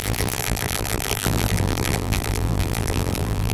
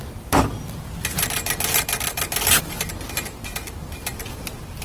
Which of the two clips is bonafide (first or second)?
second